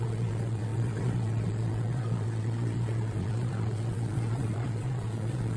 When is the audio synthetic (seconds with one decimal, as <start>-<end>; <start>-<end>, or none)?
0.0-5.6